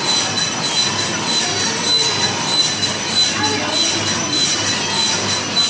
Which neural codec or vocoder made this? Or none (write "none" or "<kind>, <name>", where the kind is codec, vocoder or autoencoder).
none